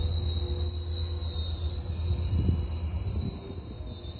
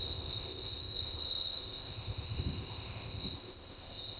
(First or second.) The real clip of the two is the first